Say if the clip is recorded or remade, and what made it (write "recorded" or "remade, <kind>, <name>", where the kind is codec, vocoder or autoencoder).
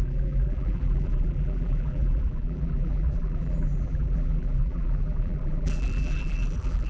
remade, vocoder, BigVGAN v2